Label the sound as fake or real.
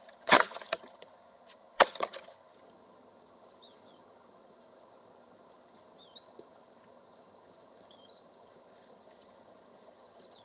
fake